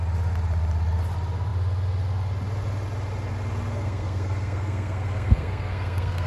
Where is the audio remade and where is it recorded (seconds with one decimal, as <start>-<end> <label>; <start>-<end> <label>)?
0.0-3.7 recorded; 3.7-6.3 remade